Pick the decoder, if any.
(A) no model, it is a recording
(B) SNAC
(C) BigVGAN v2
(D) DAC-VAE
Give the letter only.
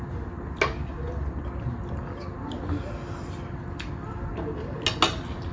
A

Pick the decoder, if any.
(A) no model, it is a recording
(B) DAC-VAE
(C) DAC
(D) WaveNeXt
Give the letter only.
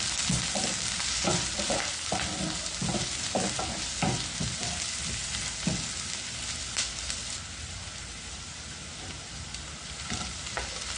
A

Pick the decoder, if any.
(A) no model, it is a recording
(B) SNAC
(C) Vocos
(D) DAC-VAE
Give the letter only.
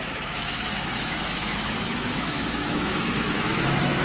D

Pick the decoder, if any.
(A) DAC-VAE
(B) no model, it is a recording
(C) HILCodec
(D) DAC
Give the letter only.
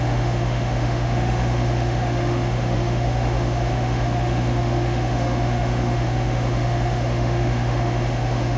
A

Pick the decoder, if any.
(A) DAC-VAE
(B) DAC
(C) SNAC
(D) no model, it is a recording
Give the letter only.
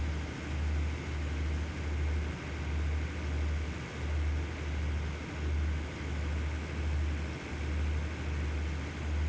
D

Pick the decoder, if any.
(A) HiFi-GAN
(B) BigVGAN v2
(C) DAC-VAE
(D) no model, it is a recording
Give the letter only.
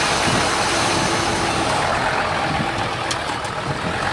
D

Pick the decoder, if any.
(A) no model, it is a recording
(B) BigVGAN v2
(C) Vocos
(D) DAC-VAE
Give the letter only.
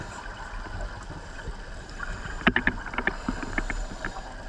A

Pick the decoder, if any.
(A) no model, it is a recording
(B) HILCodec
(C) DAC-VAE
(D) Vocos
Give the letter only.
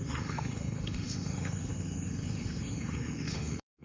C